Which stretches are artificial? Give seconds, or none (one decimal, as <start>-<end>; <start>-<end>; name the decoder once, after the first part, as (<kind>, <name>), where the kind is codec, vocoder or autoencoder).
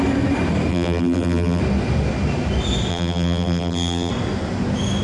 0.7-1.6 (vocoder, BigVGAN v2); 2.9-4.1